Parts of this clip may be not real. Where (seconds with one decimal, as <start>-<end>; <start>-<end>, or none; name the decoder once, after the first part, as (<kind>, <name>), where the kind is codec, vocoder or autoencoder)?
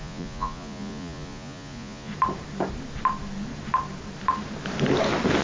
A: 0.0-2.1 (vocoder, Vocos)